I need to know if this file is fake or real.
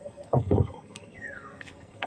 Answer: fake